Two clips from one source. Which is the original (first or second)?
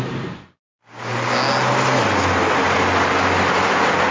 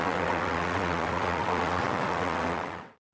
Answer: first